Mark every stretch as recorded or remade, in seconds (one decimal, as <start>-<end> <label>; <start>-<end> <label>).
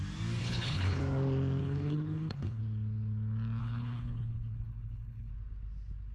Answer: 0.0-0.4 recorded; 0.4-1.0 remade; 1.0-1.6 recorded; 1.6-2.6 remade; 2.6-3.6 recorded; 3.6-5.3 remade; 5.3-6.1 recorded